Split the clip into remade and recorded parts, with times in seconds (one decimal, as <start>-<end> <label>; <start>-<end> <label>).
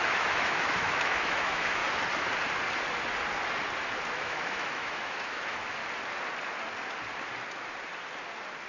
0.0-1.8 remade; 1.8-4.2 recorded; 4.2-5.8 remade; 5.8-8.7 recorded